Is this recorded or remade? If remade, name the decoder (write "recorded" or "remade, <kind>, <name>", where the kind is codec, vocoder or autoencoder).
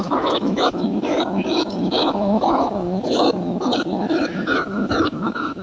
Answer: remade, autoencoder, DAC-VAE